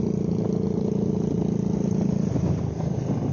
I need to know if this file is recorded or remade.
recorded